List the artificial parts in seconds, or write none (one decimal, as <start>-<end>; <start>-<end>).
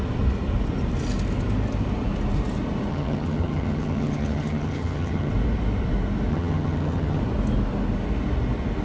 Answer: 2.9-5.3; 6.3-7.2